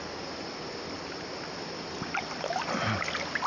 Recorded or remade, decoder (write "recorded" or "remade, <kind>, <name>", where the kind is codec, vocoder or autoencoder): recorded